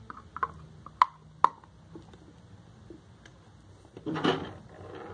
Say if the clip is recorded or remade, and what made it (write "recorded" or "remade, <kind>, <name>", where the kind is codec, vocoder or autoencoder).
recorded